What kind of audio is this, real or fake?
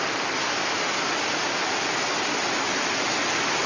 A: real